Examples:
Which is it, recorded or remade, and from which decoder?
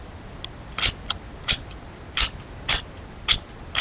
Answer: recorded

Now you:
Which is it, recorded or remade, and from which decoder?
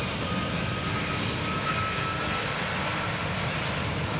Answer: recorded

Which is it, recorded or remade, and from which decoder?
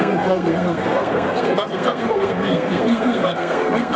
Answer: remade, codec, SNAC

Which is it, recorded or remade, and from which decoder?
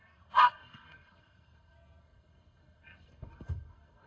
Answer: remade, codec, SNAC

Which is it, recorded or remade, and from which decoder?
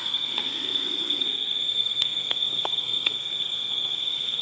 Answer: remade, codec, SNAC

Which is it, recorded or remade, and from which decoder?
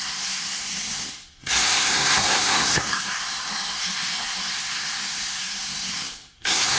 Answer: remade, codec, SNAC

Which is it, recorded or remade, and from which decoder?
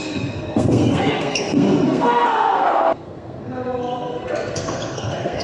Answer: remade, codec, SNAC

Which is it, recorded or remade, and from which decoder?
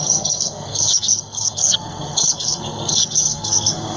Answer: remade, codec, SNAC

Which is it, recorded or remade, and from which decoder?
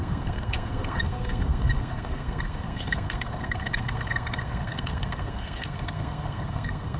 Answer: remade, codec, SNAC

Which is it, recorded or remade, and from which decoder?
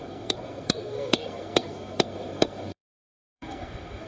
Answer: remade, codec, SNAC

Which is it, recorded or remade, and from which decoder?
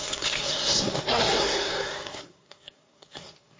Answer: remade, codec, SNAC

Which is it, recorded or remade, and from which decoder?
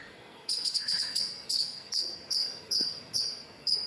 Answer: remade, codec, SNAC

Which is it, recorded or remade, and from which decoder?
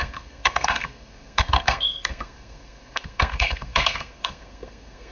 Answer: remade, codec, SNAC